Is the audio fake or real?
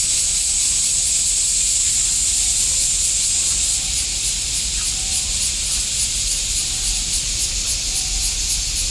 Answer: real